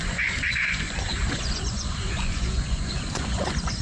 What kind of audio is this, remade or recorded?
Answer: remade